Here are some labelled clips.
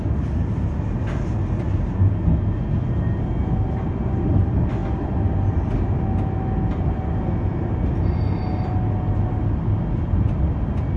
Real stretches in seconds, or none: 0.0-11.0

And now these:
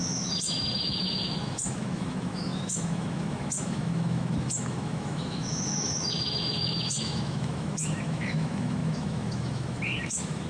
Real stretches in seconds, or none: none

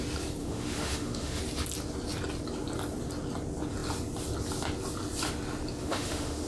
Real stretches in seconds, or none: 0.0-0.4; 1.4-5.8

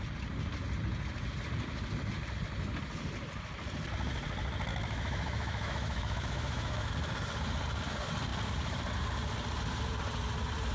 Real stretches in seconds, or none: 0.0-4.7; 6.9-10.7

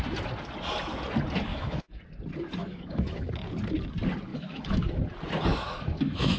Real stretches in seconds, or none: 0.0-1.5; 2.0-2.6; 3.3-4.3; 4.9-5.5

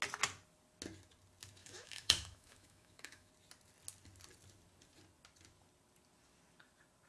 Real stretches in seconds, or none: 0.0-1.6; 3.3-7.1

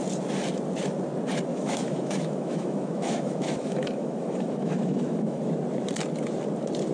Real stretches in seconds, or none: 0.0-1.5; 5.4-6.9